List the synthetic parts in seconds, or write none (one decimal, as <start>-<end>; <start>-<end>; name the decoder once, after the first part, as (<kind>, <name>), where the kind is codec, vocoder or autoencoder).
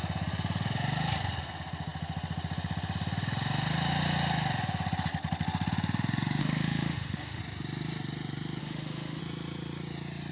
6.4-7.4 (autoencoder, DAC-VAE); 8.6-9.2